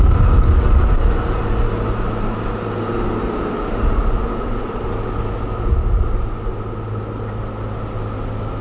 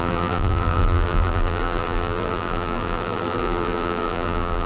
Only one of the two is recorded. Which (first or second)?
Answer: first